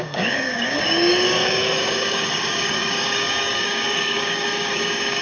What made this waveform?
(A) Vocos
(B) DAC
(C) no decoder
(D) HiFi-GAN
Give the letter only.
B